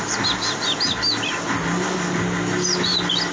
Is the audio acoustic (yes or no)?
yes